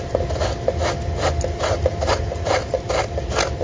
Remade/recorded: recorded